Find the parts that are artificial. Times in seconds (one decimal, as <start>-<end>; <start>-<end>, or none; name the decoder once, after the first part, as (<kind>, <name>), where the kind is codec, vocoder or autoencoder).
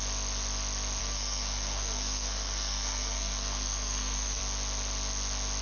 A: 1.0-4.4 (codec, SNAC)